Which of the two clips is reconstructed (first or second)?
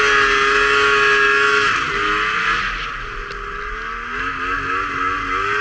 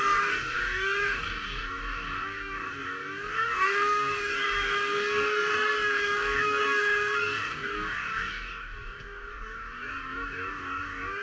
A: second